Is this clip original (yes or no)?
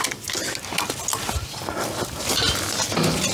yes